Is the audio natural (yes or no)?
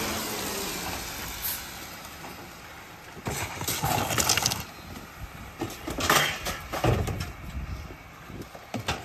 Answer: yes